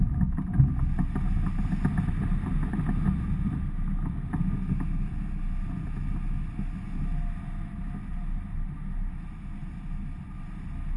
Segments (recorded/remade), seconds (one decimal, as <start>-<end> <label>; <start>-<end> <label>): 0.0-11.0 recorded